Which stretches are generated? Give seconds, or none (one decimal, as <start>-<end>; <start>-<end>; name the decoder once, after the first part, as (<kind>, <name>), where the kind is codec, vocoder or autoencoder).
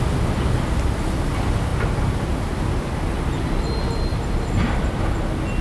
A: 4.1-5.0 (vocoder, BigVGAN v2)